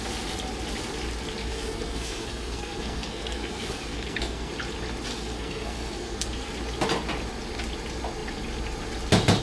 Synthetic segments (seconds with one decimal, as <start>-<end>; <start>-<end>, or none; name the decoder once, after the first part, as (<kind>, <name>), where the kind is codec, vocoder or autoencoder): 1.4-4.5 (codec, SNAC); 5.1-6.5